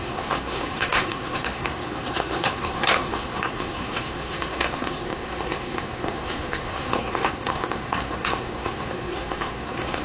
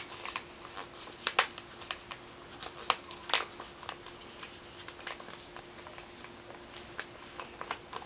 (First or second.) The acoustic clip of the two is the second